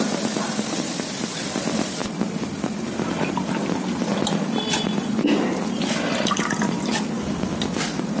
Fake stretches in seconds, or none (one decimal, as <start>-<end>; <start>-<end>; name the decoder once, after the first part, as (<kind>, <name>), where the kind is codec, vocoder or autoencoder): none